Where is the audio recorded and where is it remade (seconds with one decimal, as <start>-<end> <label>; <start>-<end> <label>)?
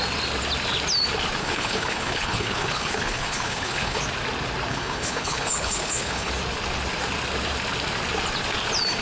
0.0-1.4 recorded; 1.4-4.0 remade; 4.0-4.7 recorded; 4.7-6.3 remade; 6.3-9.0 recorded